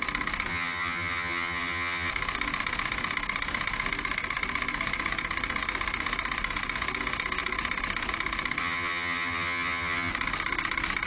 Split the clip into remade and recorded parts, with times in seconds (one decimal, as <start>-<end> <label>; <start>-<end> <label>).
0.0-0.5 recorded; 0.5-2.1 remade; 2.1-8.6 recorded; 8.6-10.1 remade; 10.1-11.1 recorded

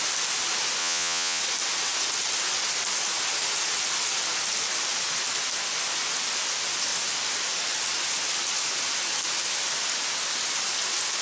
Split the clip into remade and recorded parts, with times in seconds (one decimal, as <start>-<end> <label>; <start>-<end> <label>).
0.0-0.8 recorded; 0.8-1.4 remade; 1.4-11.2 recorded

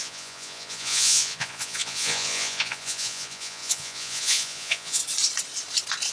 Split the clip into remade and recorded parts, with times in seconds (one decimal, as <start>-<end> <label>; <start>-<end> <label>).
0.0-5.0 remade; 5.0-6.1 recorded

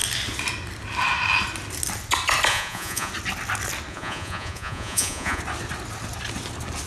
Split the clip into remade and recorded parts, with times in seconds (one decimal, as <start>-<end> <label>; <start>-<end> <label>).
0.0-2.5 recorded; 2.5-3.1 remade; 3.1-3.9 recorded; 3.9-5.4 remade; 5.4-6.9 recorded

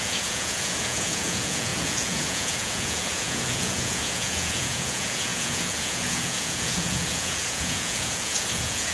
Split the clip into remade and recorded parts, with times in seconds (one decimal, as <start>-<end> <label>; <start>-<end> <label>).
0.0-8.9 remade

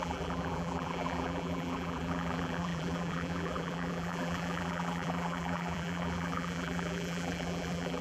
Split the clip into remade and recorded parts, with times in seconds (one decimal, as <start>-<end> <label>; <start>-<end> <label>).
0.0-8.0 remade

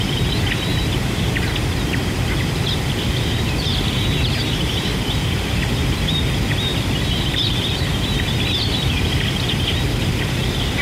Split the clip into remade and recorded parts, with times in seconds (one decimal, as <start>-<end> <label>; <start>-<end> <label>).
0.0-0.7 remade; 0.7-1.9 recorded; 1.9-10.8 remade